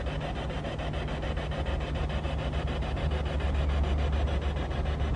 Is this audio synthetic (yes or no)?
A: no